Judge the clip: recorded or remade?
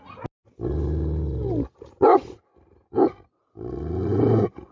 recorded